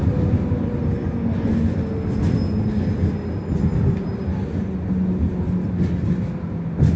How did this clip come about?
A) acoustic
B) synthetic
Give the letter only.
A